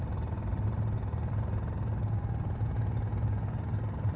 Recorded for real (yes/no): yes